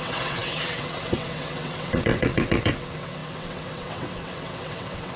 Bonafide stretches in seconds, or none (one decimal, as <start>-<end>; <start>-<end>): none